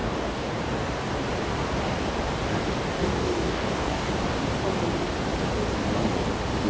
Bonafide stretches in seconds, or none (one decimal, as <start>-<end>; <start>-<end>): 0.5-3.0; 4.1-6.7